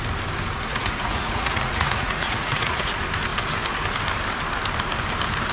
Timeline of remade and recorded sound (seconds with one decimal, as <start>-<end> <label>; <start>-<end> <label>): 0.0-0.7 recorded; 0.7-2.9 remade; 2.9-5.5 recorded